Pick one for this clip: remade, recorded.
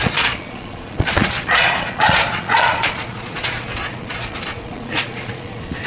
remade